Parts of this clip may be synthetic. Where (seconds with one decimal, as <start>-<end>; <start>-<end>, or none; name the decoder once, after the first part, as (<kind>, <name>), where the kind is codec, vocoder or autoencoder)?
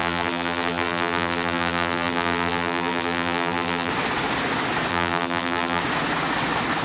0.0-3.9 (vocoder, BigVGAN v2); 4.9-5.8